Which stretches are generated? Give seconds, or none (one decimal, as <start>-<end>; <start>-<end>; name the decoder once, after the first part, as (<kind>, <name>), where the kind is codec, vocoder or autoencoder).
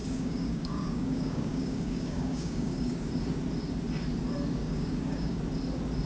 0.0-3.1 (codec, DAC); 4.6-5.4